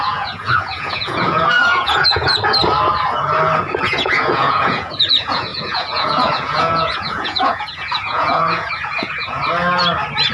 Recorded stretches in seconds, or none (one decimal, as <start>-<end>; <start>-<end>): 2.3-3.8; 9.4-10.3